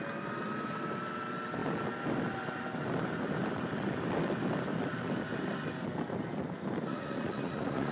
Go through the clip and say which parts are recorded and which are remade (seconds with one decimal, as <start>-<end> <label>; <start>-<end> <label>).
0.0-6.9 recorded; 6.9-7.9 remade